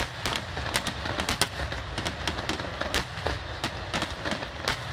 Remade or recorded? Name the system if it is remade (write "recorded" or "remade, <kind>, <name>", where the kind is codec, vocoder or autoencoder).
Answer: recorded